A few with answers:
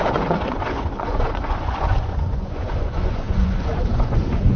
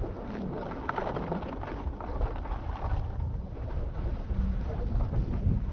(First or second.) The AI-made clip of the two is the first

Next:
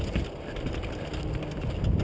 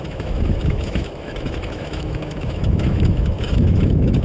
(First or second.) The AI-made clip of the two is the second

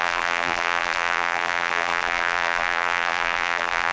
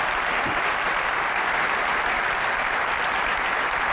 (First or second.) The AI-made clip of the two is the first